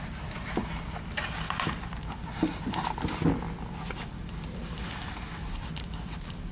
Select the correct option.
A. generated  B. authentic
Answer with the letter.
B